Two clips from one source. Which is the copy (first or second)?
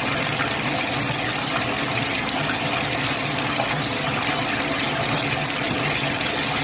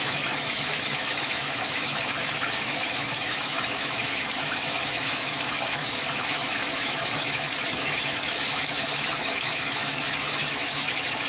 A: second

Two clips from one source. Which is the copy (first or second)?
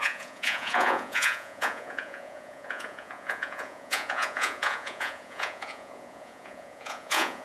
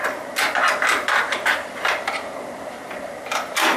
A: first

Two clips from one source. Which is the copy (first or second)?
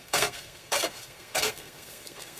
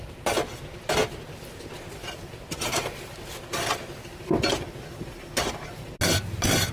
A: first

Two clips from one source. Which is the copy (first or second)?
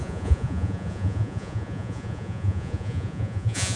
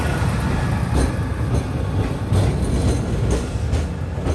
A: first